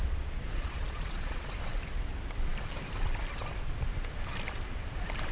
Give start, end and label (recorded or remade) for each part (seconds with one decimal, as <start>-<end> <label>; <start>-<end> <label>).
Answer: 0.0-1.5 remade; 1.5-5.3 recorded